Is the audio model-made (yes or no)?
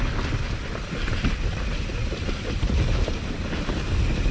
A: no